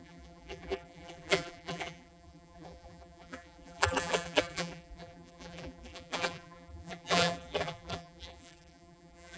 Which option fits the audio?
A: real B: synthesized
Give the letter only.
B